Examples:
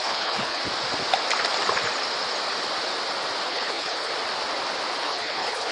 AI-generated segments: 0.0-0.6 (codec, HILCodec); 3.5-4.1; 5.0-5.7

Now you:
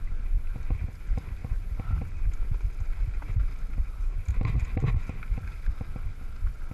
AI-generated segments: none

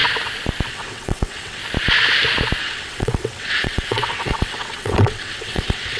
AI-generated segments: 0.7-1.6 (vocoder, WaveNeXt); 2.6-6.0

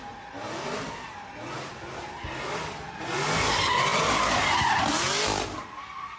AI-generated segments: none

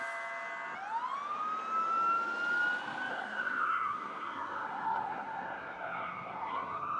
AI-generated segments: 3.1-7.0 (codec, SNAC)

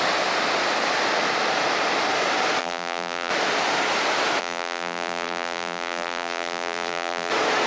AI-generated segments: 2.6-3.3 (vocoder, BigVGAN v2); 4.4-7.3